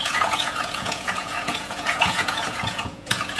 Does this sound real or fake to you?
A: fake